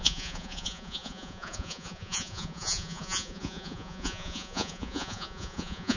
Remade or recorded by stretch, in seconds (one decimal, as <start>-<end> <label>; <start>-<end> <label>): 0.0-6.0 remade